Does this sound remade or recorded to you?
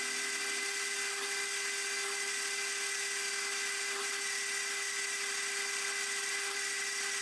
recorded